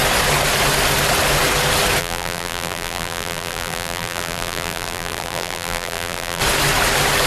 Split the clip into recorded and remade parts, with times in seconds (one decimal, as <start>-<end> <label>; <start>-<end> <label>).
0.0-2.0 recorded; 2.0-6.4 remade; 6.4-7.3 recorded